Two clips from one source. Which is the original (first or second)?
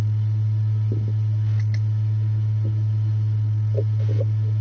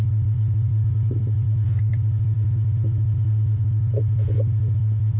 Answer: first